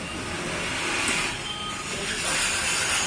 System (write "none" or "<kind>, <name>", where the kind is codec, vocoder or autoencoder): none